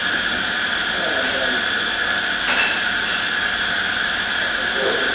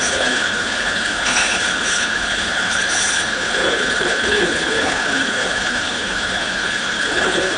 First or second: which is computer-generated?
second